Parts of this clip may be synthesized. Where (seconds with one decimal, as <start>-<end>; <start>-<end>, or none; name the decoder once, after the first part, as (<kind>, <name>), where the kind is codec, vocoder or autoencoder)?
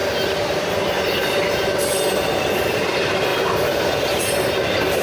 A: none